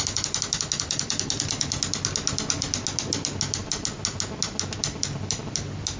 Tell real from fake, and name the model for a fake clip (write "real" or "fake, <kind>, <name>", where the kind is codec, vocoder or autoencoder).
real